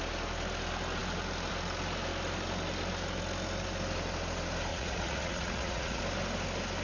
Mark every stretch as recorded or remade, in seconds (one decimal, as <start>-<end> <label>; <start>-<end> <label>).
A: 0.0-4.7 recorded; 4.7-6.0 remade; 6.0-6.8 recorded